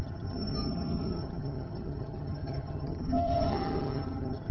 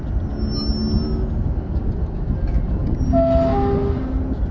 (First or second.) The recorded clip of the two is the second